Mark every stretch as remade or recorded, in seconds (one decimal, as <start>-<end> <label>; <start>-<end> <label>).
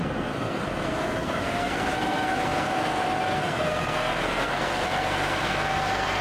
0.0-6.2 remade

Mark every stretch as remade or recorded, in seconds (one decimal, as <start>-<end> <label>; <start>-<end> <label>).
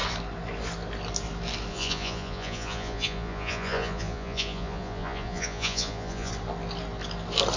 0.0-1.7 recorded; 1.7-6.3 remade; 6.3-7.6 recorded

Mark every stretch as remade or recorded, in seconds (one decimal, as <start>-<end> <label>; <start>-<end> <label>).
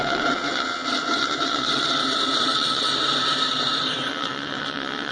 0.0-2.0 remade; 2.0-2.5 recorded; 2.5-2.9 remade; 2.9-4.1 recorded; 4.1-5.1 remade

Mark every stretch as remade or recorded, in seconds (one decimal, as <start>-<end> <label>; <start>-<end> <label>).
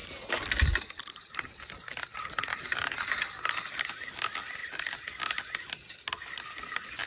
0.0-7.1 recorded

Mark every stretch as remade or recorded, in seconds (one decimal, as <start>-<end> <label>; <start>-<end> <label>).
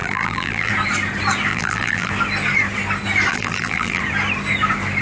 0.0-0.7 remade; 0.7-1.5 recorded; 1.5-2.1 remade; 2.1-3.3 recorded; 3.3-4.0 remade; 4.0-5.0 recorded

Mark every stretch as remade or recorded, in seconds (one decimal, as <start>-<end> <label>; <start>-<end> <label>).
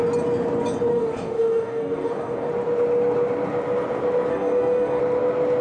0.0-0.9 recorded; 0.9-2.5 remade; 2.5-4.3 recorded; 4.3-5.0 remade; 5.0-5.6 recorded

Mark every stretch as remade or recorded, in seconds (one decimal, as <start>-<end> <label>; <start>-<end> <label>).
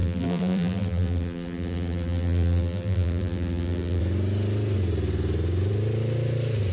0.0-4.0 remade; 4.0-6.7 recorded